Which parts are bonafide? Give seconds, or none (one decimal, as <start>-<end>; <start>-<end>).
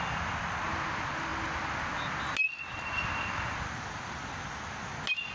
0.0-5.3